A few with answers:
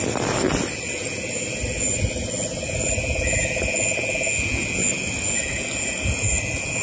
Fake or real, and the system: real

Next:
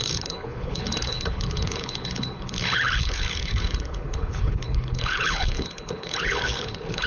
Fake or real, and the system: fake, codec, HILCodec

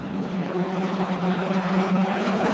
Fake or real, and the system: fake, codec, HILCodec